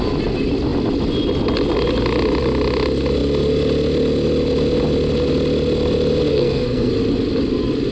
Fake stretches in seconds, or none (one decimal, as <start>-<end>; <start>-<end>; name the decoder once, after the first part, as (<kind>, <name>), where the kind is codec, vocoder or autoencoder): 6.3-6.9 (codec, SNAC)